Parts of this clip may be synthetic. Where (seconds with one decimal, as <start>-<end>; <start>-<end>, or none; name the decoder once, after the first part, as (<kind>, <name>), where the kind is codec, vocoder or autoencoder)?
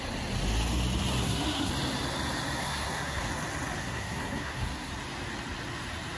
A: 1.2-1.7 (codec, SNAC); 2.6-3.3; 3.8-4.9